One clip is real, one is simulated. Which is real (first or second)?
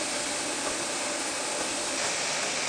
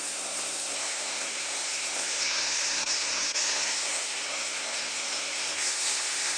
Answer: first